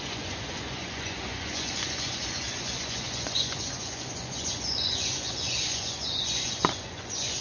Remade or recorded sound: remade